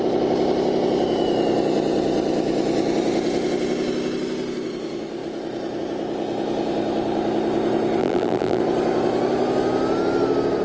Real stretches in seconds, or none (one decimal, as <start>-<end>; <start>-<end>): 0.0-8.0; 8.6-10.6